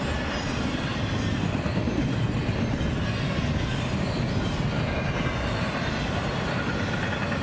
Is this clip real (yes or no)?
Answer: yes